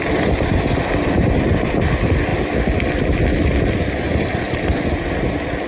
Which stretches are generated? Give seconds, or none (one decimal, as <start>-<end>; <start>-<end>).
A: 0.0-5.7